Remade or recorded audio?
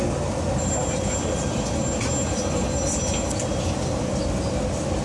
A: recorded